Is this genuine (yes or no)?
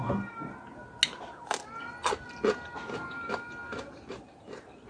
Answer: yes